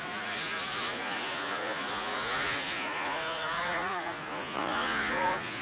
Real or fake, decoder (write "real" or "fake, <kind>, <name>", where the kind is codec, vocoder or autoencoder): fake, vocoder, Vocos